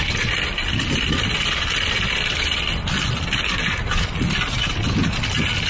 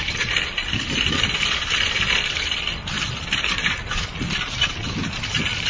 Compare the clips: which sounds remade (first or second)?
second